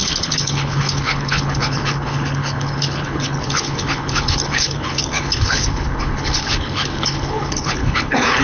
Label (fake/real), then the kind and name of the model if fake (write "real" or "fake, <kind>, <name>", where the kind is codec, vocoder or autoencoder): fake, codec, HILCodec